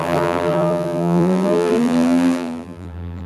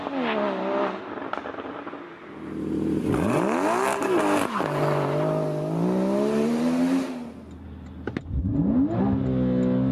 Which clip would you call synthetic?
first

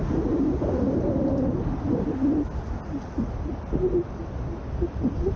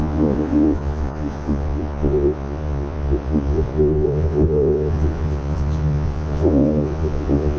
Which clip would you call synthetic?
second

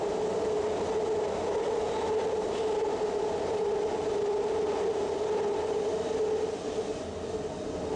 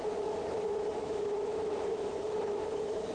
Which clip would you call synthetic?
second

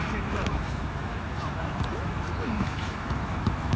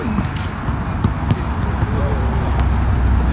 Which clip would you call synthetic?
first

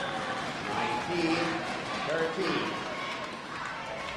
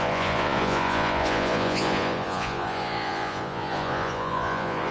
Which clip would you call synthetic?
second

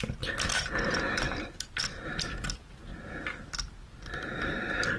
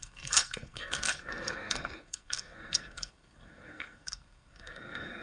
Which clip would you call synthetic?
second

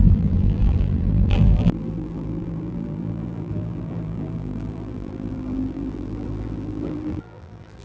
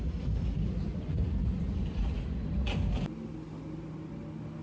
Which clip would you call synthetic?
first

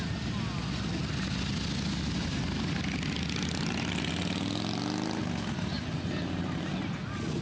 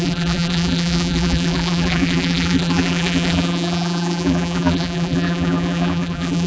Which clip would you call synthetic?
second